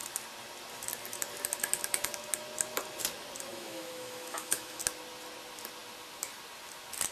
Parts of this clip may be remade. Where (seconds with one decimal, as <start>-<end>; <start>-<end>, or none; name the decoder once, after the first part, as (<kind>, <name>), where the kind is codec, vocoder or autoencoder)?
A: 3.5-4.8 (autoencoder, DAC-VAE)